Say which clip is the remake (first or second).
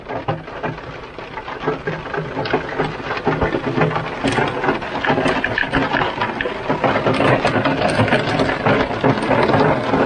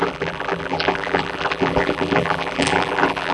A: second